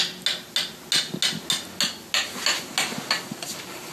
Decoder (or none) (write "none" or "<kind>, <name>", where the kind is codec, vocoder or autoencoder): none